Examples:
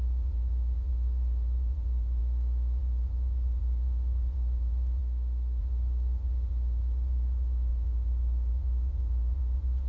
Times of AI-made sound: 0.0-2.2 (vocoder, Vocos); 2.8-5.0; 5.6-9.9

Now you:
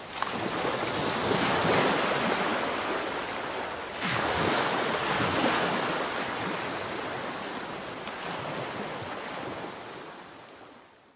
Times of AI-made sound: none

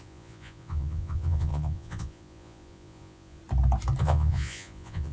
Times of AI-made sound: 0.0-3.4 (vocoder, Vocos); 4.0-5.1

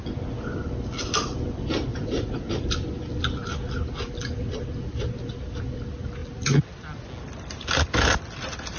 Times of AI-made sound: 1.9-2.5 (vocoder, Vocos)

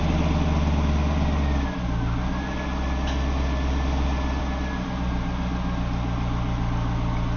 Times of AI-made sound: none

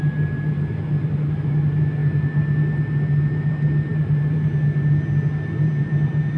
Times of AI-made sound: none

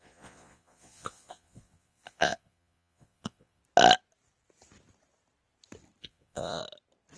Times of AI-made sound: 0.0-3.6 (vocoder, Vocos); 6.0-6.6

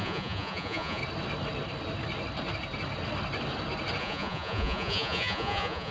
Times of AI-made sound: 0.0-1.0 (vocoder, Vocos); 4.0-5.9